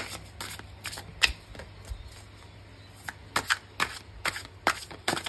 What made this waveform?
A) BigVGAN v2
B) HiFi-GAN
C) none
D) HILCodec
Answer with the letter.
C